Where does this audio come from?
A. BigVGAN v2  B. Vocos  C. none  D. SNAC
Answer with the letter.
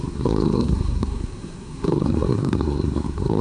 D